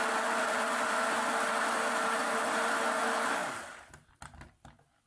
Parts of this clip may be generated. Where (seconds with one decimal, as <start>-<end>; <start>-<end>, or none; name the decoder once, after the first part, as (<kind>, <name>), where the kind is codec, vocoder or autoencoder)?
2.2-2.7 (vocoder, BigVGAN v2); 3.4-4.1